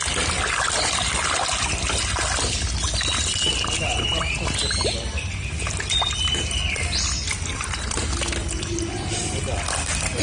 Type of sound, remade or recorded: recorded